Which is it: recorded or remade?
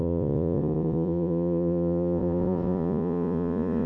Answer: remade